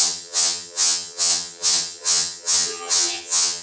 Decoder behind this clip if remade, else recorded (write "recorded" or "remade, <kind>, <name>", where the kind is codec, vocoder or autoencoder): remade, vocoder, HiFi-GAN